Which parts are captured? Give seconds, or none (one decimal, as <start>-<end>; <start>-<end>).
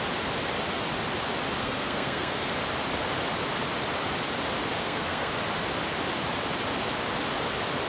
0.0-1.6; 2.5-4.8; 5.3-7.9